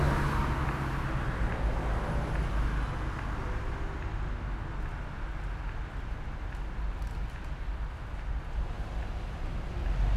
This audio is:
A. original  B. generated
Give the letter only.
A